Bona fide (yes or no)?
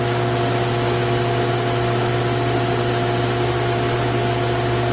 yes